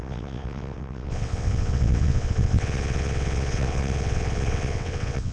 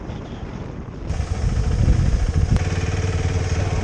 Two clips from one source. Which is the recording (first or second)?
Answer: second